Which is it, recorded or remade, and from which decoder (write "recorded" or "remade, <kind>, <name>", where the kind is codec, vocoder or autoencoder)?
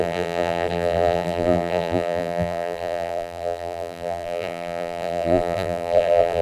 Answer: remade, vocoder, BigVGAN v2